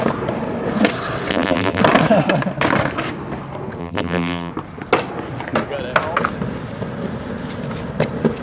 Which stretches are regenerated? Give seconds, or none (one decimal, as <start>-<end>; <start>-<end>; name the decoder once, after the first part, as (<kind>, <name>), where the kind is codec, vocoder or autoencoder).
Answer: 1.3-1.8 (vocoder, BigVGAN v2); 3.8-4.5